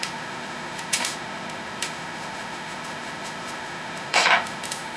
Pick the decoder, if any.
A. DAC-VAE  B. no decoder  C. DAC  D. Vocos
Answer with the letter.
A